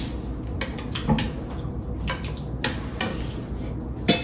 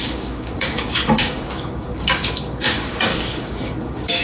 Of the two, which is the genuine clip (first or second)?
first